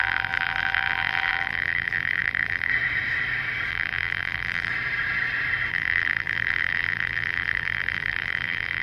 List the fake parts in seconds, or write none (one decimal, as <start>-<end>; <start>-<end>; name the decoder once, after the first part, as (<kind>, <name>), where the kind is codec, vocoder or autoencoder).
0.0-2.7 (vocoder, BigVGAN v2); 3.7-4.7; 5.7-8.8